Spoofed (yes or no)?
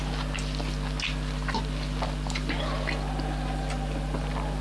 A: no